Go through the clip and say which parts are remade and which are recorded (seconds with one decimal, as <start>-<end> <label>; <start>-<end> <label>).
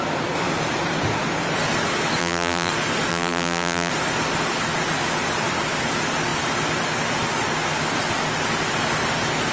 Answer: 0.0-2.2 recorded; 2.2-2.7 remade; 2.7-3.1 recorded; 3.1-3.9 remade; 3.9-9.5 recorded